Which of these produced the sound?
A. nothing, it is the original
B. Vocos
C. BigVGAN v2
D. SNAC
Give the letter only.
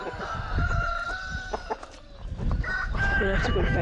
A